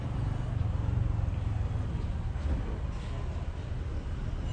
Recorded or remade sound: recorded